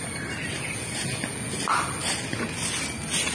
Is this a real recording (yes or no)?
yes